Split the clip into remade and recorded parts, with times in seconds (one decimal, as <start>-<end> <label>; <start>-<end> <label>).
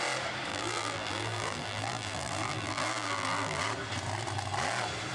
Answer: 0.0-0.5 recorded; 0.5-3.6 remade; 3.6-5.1 recorded